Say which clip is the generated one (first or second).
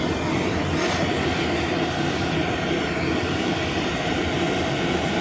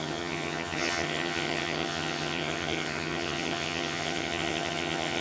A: second